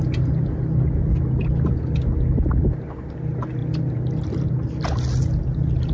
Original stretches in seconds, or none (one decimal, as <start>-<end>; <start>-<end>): 0.0-5.9